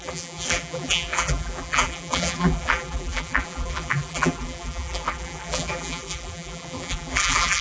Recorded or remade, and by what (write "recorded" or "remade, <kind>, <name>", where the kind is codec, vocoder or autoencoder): remade, vocoder, BigVGAN v2